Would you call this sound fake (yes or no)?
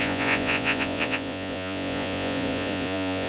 yes